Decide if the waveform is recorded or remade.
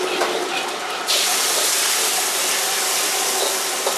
recorded